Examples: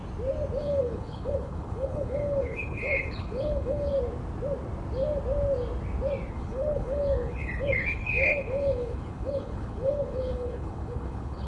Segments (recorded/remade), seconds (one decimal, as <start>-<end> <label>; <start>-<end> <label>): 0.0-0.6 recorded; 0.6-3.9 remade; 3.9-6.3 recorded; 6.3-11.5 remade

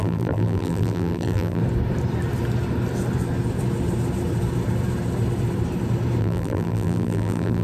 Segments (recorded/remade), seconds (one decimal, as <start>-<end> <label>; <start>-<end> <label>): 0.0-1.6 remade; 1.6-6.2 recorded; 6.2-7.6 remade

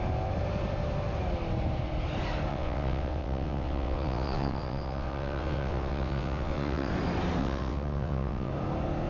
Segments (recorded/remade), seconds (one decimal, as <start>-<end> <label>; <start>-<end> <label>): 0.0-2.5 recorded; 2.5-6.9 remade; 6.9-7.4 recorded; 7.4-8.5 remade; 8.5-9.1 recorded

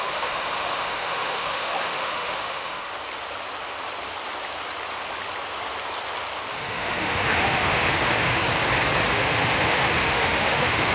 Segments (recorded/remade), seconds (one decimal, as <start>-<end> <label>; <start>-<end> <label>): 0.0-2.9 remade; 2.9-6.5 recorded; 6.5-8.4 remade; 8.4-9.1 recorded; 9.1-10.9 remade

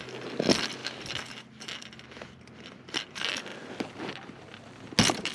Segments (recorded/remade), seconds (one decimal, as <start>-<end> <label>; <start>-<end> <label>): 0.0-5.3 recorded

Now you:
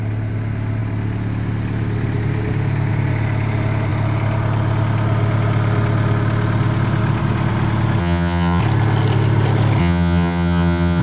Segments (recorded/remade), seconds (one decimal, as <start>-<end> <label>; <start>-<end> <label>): 0.0-8.0 recorded; 8.0-8.6 remade; 8.6-9.8 recorded; 9.8-11.0 remade